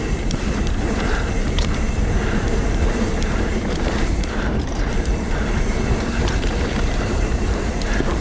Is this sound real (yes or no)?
no